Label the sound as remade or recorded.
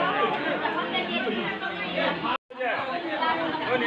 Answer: recorded